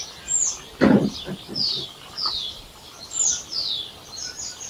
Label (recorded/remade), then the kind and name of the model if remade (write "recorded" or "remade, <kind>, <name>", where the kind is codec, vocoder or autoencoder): recorded